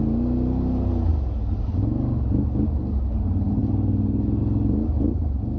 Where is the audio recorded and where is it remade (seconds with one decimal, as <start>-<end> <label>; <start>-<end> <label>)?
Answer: 0.0-3.6 recorded; 3.6-4.4 remade; 4.4-5.6 recorded